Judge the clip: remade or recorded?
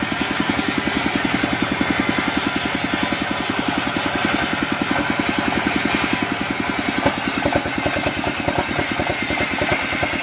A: recorded